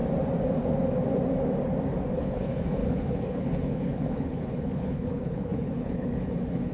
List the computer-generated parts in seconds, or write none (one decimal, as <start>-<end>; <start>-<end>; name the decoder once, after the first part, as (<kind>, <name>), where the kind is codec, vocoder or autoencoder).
2.1-6.7 (codec, HILCodec)